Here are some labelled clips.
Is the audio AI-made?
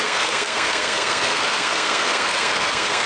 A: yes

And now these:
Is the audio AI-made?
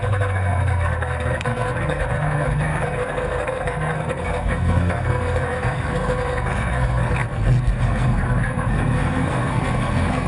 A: yes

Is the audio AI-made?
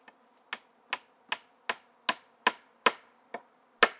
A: no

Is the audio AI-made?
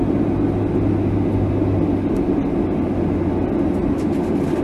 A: no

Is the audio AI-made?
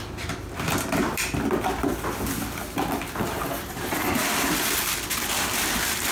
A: no